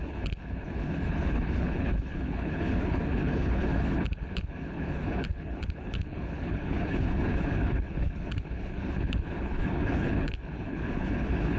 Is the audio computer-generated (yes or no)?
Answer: yes